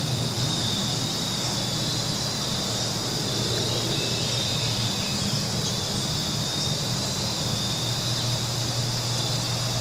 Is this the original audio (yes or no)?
yes